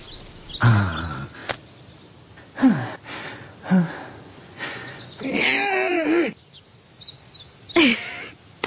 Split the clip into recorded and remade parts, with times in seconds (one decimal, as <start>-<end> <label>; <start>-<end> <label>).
0.0-4.4 recorded; 4.4-5.2 remade; 5.2-8.7 recorded